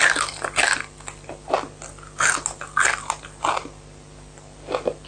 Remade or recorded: recorded